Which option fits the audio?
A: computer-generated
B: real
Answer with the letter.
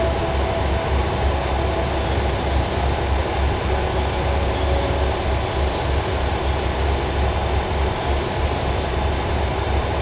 B